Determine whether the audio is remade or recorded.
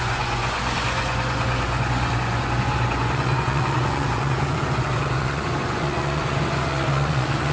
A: remade